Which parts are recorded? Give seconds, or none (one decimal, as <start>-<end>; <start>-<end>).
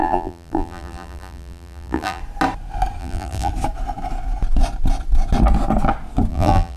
2.2-3.0; 3.5-6.3